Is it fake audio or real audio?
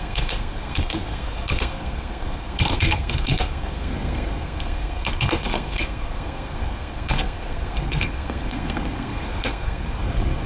fake